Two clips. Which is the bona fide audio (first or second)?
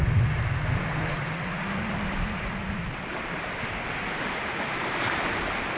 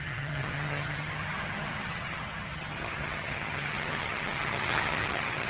first